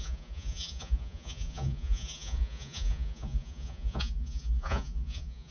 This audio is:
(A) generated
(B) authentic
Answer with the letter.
A